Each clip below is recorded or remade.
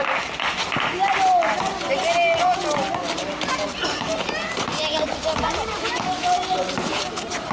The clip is recorded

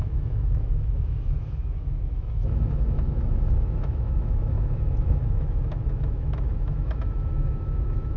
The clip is remade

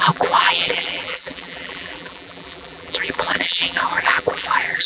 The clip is remade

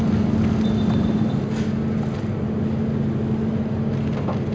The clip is recorded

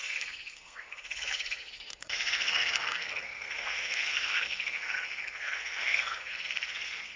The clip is remade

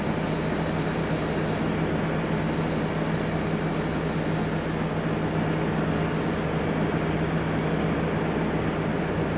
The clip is recorded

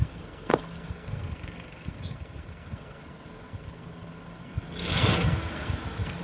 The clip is remade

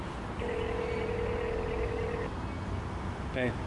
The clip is recorded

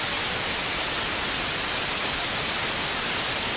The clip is recorded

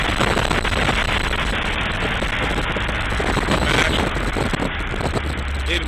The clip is recorded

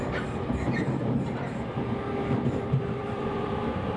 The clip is remade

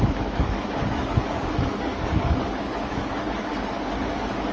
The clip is remade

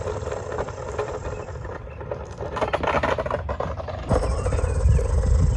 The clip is recorded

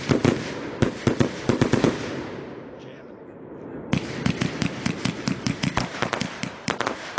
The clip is remade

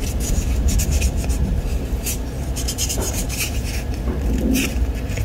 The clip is remade